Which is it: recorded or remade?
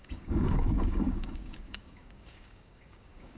remade